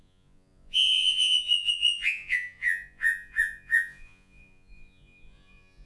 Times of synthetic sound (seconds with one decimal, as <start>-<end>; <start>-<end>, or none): 0.0-5.9